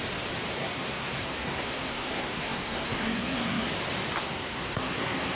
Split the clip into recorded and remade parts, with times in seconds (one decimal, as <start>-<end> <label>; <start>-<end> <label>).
0.0-0.5 recorded; 0.5-3.7 remade; 3.7-4.2 recorded; 4.2-5.4 remade